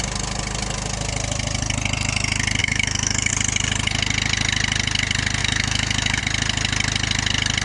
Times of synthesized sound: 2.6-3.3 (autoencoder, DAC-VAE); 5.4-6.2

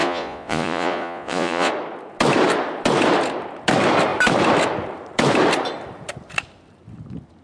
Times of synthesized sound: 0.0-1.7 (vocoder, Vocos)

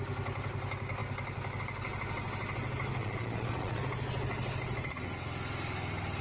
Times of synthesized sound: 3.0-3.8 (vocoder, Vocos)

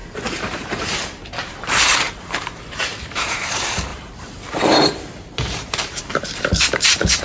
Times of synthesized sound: 0.7-7.2 (vocoder, BigVGAN v2)

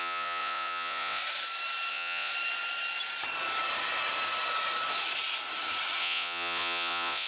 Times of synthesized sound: 0.0-1.2 (vocoder, Vocos); 1.9-2.3; 6.0-7.3

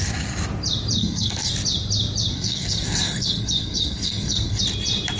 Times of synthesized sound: 1.0-1.5 (codec, SNAC); 2.3-4.6